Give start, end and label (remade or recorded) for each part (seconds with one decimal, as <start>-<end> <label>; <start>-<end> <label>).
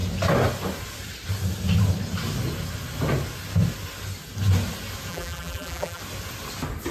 0.0-5.1 recorded; 5.1-6.0 remade; 6.0-6.9 recorded